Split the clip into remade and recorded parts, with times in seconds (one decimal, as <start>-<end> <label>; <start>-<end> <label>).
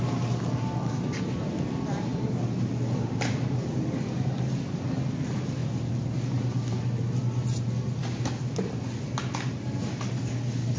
0.0-10.8 recorded